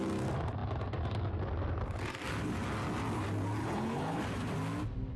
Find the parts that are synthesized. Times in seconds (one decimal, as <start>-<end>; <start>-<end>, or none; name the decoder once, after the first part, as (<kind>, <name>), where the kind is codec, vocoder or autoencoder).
3.6-4.2 (codec, HILCodec)

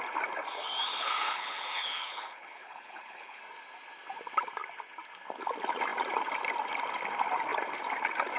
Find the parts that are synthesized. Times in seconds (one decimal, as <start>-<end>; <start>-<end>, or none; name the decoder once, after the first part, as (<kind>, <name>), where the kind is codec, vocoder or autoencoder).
0.9-3.4 (codec, HILCodec)

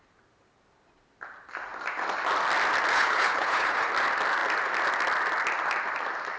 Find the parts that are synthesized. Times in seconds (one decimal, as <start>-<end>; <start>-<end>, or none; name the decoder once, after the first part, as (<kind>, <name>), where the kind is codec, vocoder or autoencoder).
2.9-3.9 (codec, HILCodec)

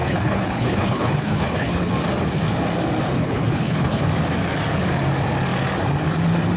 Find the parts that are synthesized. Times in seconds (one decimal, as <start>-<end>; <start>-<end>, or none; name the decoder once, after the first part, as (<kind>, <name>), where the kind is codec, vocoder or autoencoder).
0.0-1.9 (codec, HILCodec); 3.2-4.1

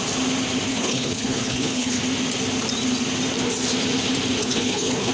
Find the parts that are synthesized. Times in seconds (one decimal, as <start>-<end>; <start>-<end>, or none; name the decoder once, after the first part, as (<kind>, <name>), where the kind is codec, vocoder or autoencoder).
0.7-2.0 (codec, HILCodec); 4.4-5.1